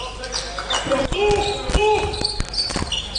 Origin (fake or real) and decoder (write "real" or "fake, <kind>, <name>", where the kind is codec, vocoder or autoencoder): real